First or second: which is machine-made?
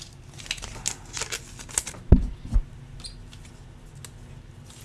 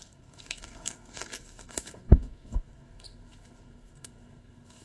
second